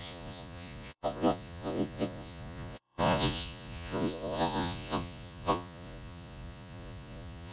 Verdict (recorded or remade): remade